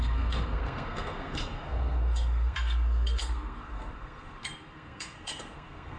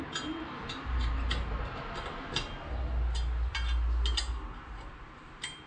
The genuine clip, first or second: second